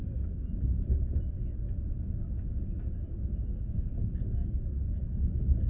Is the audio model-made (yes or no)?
no